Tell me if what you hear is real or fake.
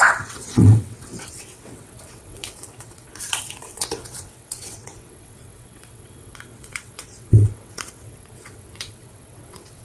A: fake